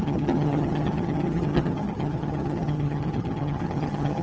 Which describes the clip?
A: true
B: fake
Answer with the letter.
B